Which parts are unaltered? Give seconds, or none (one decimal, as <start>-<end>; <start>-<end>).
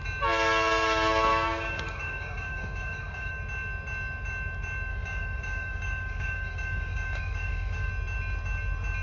0.0-1.3; 3.3-4.9; 7.9-9.0